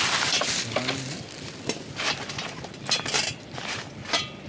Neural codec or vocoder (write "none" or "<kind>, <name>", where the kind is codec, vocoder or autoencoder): none